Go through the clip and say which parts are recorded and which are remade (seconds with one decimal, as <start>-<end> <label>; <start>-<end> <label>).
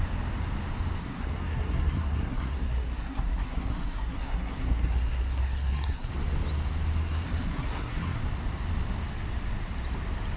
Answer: 0.0-1.0 recorded; 1.0-6.1 remade; 6.1-7.0 recorded; 7.0-8.2 remade; 8.2-10.4 recorded